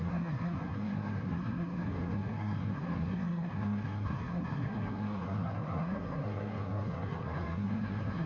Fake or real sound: fake